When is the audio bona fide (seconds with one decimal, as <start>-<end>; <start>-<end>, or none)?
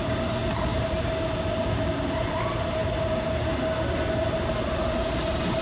0.0-5.6